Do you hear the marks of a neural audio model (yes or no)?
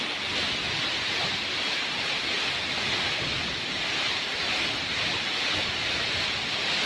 no